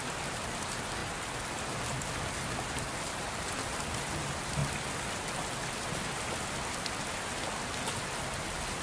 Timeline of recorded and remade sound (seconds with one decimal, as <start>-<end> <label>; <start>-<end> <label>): 0.0-8.8 recorded